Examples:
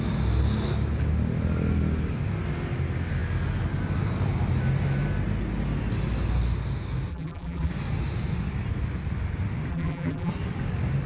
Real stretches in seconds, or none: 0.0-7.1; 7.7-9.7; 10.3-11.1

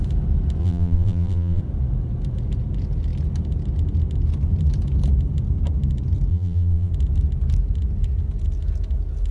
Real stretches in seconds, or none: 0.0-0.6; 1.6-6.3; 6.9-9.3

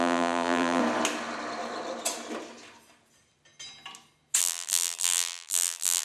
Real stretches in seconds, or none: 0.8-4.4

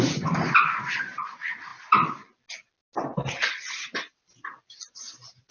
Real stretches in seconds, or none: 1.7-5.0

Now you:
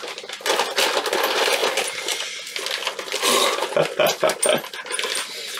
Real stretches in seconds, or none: 0.0-5.6

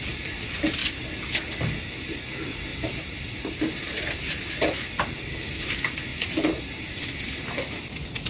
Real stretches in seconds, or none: 0.0-0.8; 2.2-2.7; 4.2-6.1; 6.8-8.3

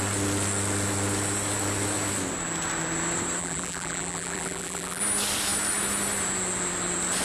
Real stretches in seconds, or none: 0.0-3.4; 5.0-7.2